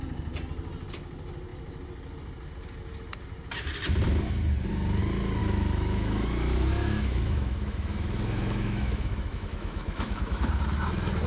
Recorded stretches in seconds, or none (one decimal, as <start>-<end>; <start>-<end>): 0.0-5.4; 10.5-11.3